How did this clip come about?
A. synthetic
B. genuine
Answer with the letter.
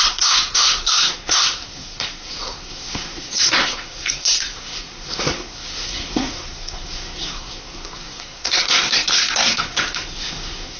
A